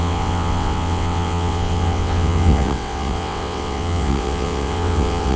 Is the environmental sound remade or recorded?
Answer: remade